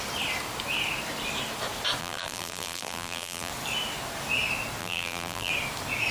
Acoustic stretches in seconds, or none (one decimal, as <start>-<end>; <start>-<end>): 0.0-2.0; 3.5-4.8; 5.5-6.1